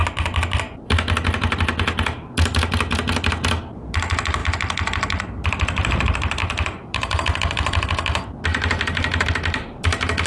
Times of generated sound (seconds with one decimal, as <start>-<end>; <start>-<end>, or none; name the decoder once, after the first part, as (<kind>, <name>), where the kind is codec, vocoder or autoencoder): 6.4-7.9 (vocoder, BigVGAN v2); 8.5-9.3